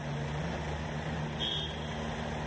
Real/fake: real